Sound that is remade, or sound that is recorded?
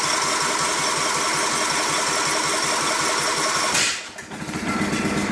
recorded